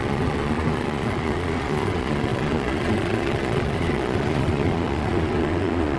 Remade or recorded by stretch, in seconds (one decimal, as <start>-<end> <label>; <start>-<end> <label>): 0.0-6.0 remade